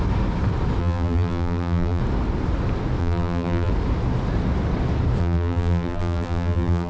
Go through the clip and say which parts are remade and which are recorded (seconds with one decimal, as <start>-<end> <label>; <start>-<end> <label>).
0.0-0.8 recorded; 0.8-2.0 remade; 2.0-3.0 recorded; 3.0-3.7 remade; 3.7-5.2 recorded; 5.2-6.9 remade